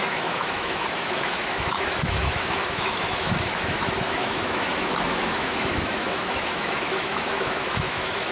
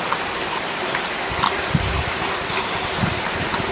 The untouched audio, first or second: second